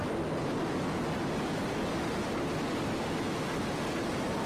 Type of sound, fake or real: real